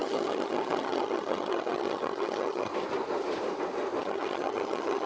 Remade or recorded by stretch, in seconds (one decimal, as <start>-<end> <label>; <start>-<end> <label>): 0.0-2.7 remade; 2.7-4.0 recorded; 4.0-5.1 remade